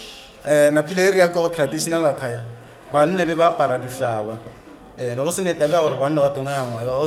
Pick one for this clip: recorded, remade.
remade